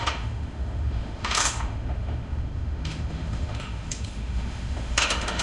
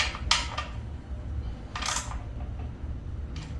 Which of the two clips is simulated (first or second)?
first